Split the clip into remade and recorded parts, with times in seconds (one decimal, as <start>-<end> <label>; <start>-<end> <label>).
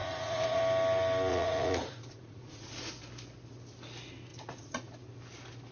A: 0.0-0.6 remade; 0.6-1.3 recorded; 1.3-2.9 remade; 2.9-4.3 recorded; 4.3-4.9 remade; 4.9-5.7 recorded